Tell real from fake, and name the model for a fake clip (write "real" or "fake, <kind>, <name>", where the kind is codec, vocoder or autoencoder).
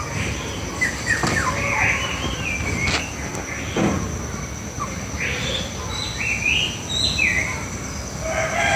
real